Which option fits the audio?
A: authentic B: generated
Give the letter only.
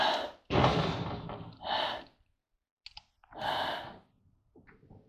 A